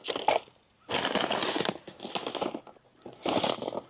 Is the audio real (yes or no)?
yes